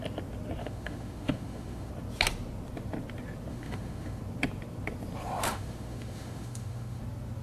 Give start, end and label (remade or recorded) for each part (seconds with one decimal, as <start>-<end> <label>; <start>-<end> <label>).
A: 0.0-0.6 recorded; 0.6-1.9 remade; 1.9-3.5 recorded; 3.5-4.2 remade; 4.2-5.5 recorded; 5.5-7.0 remade; 7.0-7.4 recorded